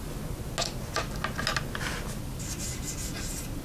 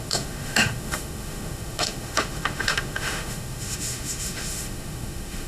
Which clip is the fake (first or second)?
second